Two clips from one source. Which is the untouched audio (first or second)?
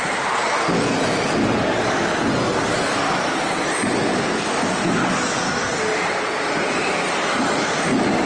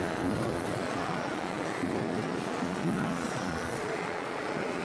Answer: first